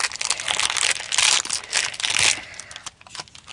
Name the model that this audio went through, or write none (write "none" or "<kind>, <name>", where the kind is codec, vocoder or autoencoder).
none